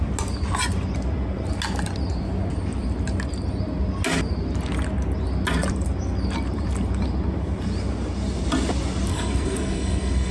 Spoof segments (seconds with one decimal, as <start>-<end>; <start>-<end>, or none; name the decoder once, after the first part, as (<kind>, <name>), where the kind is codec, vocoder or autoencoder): 9.1-10.3 (codec, SNAC)